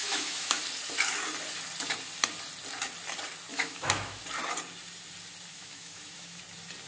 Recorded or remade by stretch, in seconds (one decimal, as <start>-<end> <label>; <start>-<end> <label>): 0.0-0.6 remade; 0.6-3.5 recorded; 3.5-4.2 remade; 4.2-5.5 recorded; 5.5-6.4 remade; 6.4-6.9 recorded